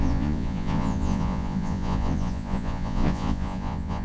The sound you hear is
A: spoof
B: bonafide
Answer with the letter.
A